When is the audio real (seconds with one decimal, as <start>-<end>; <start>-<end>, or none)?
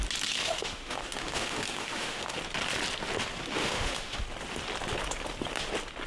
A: 0.0-0.4; 2.4-3.6; 4.2-6.1